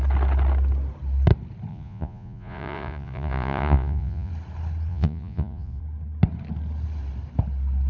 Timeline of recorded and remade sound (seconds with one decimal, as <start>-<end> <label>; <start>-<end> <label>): 0.0-1.7 recorded; 1.7-4.3 remade; 4.3-4.9 recorded; 4.9-5.8 remade; 5.8-7.9 recorded